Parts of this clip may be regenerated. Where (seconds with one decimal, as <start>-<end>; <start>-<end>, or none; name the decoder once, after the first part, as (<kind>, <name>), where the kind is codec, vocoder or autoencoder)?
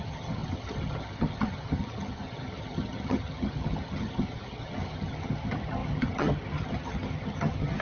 0.0-7.8 (vocoder, HiFi-GAN)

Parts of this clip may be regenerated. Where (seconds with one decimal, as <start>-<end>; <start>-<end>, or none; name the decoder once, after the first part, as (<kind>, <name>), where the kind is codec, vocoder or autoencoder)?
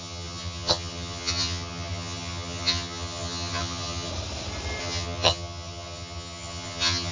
0.0-4.1 (vocoder, HiFi-GAN); 4.8-7.1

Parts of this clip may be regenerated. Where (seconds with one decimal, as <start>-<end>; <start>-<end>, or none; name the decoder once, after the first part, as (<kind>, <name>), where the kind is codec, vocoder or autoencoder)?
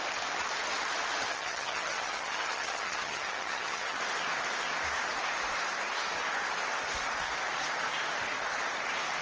1.3-4.0 (vocoder, HiFi-GAN)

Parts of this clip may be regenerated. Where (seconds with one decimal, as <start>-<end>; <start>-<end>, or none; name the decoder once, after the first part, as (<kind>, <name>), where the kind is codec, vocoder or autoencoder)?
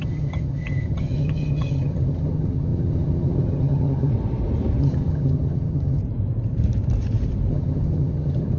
0.0-4.1 (vocoder, HiFi-GAN); 4.8-6.0; 7.5-8.6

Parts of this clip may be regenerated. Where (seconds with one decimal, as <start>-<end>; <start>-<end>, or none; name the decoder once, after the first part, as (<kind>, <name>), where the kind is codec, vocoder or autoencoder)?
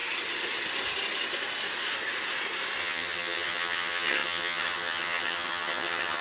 2.8-6.2 (vocoder, HiFi-GAN)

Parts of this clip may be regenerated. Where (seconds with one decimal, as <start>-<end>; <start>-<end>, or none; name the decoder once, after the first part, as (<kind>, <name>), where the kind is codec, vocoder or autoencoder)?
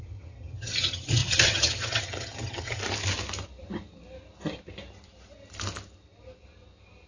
0.0-2.8 (vocoder, HiFi-GAN)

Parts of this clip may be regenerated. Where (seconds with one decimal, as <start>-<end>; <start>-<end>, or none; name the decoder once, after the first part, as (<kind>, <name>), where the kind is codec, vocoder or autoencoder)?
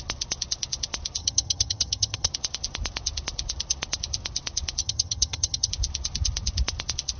1.2-2.3 (vocoder, HiFi-GAN); 4.8-5.7